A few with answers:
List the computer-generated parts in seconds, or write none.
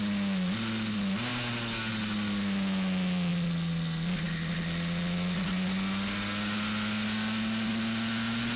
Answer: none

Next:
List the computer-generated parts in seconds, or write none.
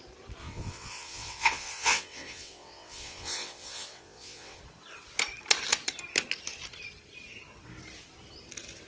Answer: 0.4-4.6 (vocoder, WaveNeXt)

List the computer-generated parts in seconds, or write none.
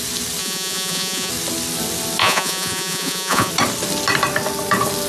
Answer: 0.4-1.3 (vocoder, Vocos); 2.2-3.5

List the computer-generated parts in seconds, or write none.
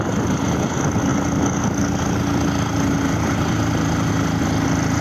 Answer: none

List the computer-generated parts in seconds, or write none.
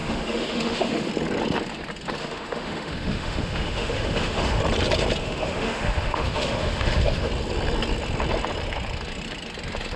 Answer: 0.0-1.1 (autoencoder, DAC-VAE); 2.2-4.6; 5.2-7.3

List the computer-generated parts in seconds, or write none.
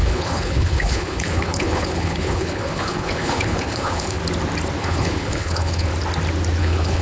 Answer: 0.0-4.2 (codec, HILCodec); 4.8-5.9; 6.6-7.0